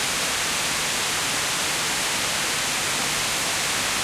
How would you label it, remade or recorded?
recorded